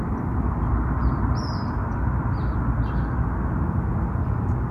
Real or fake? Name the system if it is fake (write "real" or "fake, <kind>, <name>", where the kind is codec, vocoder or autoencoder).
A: real